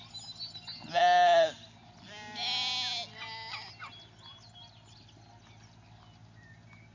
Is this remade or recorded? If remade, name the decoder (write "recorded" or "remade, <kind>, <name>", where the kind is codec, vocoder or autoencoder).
recorded